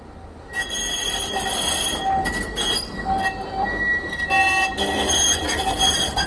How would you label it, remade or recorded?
recorded